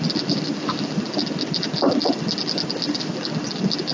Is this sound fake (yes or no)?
no